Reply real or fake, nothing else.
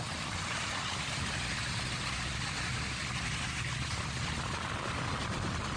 real